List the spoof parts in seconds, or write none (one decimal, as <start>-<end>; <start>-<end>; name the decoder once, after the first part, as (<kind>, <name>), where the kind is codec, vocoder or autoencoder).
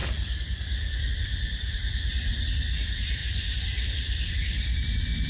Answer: 0.0-1.1 (codec, DAC)